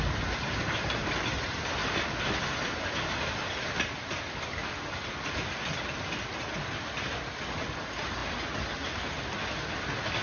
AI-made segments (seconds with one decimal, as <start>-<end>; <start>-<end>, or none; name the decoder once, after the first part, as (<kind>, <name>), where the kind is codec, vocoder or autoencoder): none